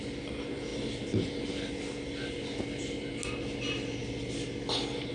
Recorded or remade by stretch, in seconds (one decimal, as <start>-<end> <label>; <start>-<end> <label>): 0.0-5.1 recorded